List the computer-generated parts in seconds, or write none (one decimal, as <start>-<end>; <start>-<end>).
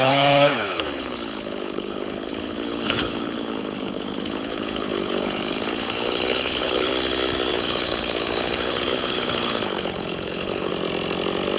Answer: 0.0-6.9; 7.5-10.7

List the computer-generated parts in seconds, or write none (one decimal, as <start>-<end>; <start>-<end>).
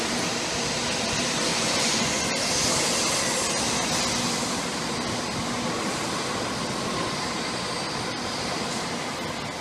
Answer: 1.5-2.3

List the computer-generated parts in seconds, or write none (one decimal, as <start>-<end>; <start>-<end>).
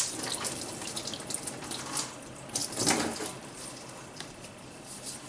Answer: 2.6-4.8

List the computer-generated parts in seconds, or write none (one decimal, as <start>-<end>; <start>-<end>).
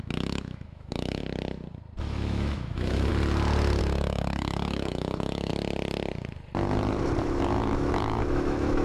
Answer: 0.0-1.2; 2.0-3.1; 3.8-5.5; 7.2-8.8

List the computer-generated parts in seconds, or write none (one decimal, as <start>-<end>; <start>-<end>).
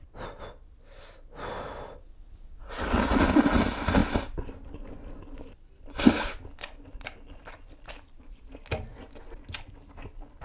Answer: 4.0-8.3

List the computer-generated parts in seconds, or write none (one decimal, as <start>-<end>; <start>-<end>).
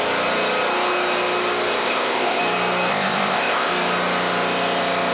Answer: 1.8-2.4; 2.9-3.7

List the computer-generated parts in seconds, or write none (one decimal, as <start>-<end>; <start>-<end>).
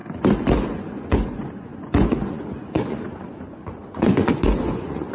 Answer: 0.7-5.1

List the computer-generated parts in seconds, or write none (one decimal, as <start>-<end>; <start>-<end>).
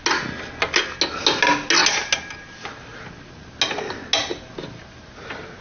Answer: none